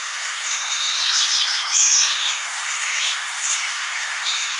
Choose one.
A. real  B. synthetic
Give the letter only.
B